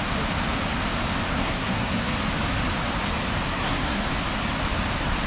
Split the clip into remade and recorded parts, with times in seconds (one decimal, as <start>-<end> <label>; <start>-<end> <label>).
0.0-1.3 recorded; 1.3-2.1 remade; 2.1-3.5 recorded; 3.5-4.1 remade; 4.1-5.3 recorded